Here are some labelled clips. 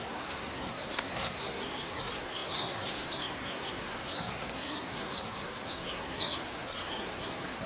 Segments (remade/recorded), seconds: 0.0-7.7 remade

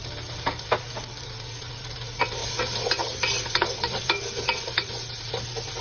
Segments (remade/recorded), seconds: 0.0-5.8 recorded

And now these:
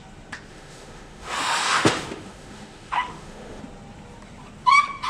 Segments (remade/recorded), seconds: 0.0-0.5 recorded; 0.5-3.6 remade; 3.6-5.1 recorded

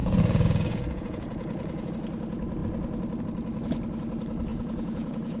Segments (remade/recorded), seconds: 0.0-1.9 remade; 1.9-4.5 recorded; 4.5-5.4 remade